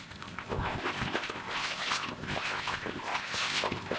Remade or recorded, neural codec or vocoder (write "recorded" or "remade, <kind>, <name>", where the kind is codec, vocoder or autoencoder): remade, codec, ZipCodec